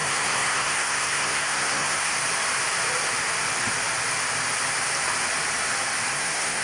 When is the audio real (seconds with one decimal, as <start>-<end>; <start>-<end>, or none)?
2.1-6.1